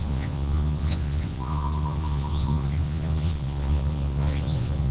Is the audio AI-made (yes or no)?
yes